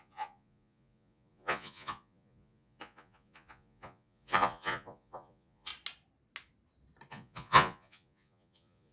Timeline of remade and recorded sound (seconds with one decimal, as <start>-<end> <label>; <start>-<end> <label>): 0.0-5.7 remade; 5.7-7.1 recorded; 7.1-8.9 remade